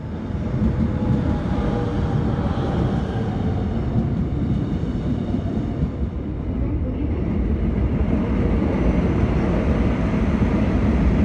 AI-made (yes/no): no